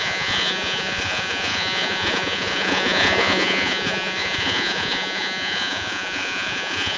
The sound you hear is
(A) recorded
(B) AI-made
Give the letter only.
B